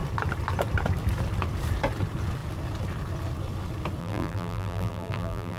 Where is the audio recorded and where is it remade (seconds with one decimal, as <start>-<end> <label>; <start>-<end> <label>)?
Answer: 0.0-4.0 recorded; 4.0-5.6 remade